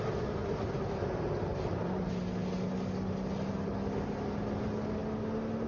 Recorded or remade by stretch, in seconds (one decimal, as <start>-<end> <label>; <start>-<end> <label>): 0.0-0.4 recorded; 0.4-1.0 remade; 1.0-1.5 recorded; 1.5-2.1 remade; 2.1-5.7 recorded